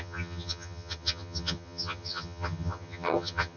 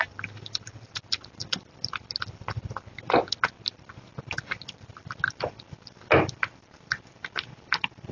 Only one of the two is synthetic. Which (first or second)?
first